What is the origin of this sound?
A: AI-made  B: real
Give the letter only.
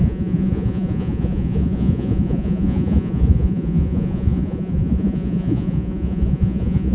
A